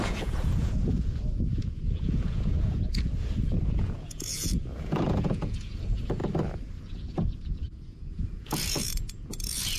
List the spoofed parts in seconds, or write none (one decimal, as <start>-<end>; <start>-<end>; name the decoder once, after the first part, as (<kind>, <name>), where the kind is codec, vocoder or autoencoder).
0.0-6.2 (vocoder, Vocos); 6.8-9.8